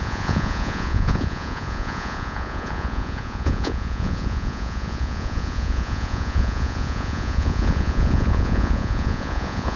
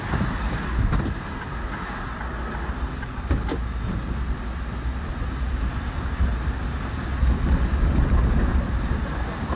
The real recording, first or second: second